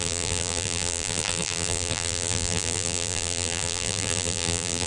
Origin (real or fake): fake